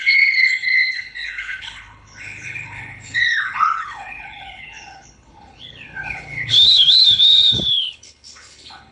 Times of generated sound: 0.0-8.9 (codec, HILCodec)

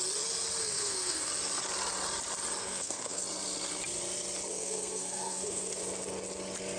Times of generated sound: 0.6-1.3 (codec, SNAC); 2.6-3.2; 4.5-5.8

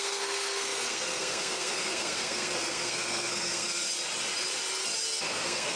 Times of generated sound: 0.0-3.8 (codec, SNAC); 5.3-5.8

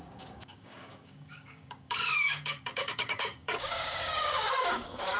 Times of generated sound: 0.0-5.2 (codec, DAC)